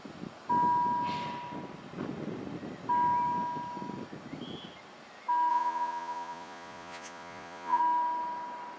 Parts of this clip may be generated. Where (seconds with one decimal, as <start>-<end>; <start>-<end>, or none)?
5.5-7.8